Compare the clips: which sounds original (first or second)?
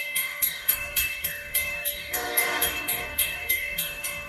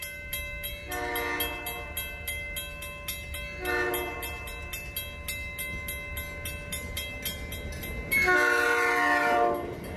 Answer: second